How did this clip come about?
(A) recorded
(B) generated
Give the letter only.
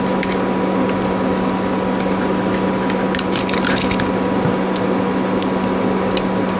A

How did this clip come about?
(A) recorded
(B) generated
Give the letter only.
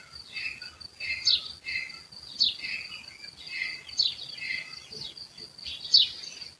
A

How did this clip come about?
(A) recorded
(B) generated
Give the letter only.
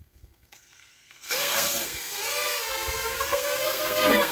B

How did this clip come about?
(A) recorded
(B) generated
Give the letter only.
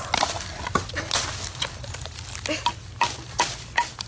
A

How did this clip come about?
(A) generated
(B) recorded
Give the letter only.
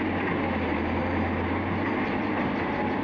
B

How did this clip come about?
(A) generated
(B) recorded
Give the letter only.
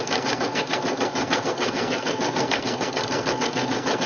A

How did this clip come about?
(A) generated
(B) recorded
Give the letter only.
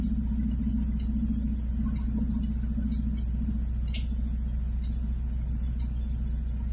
B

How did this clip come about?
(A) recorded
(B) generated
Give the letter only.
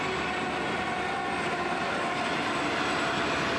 A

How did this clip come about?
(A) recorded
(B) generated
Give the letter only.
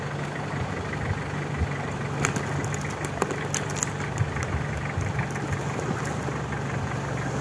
A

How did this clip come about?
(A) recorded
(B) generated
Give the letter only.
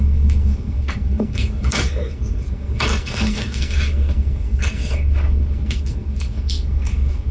B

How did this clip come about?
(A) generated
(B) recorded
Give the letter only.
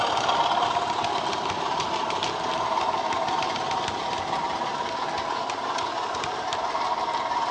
B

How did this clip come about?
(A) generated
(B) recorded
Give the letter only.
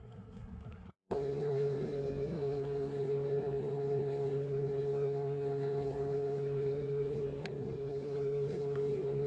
A